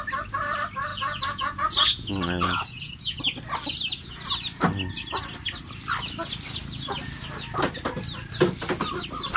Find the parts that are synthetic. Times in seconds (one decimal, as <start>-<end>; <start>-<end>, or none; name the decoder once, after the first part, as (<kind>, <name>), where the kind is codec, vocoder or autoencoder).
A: 0.9-3.2 (vocoder, Vocos)